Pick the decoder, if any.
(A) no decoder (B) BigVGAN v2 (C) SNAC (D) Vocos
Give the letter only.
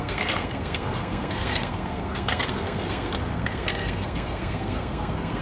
C